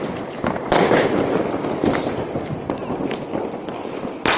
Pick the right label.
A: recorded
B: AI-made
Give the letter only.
A